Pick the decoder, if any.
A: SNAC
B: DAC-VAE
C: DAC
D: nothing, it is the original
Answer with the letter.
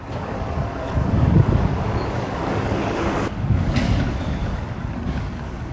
C